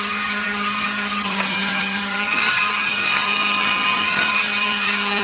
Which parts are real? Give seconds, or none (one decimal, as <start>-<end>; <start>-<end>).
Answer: none